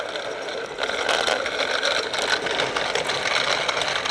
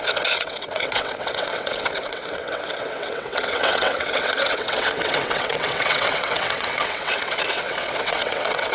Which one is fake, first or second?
second